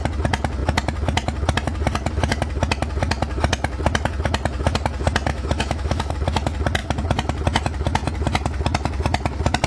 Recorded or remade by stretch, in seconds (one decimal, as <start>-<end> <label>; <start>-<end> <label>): 0.0-5.3 recorded; 5.3-6.1 remade; 6.1-9.7 recorded